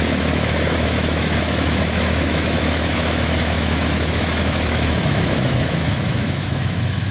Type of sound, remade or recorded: remade